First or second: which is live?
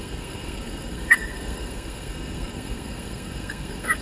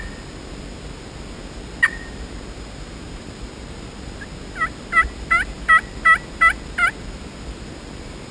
second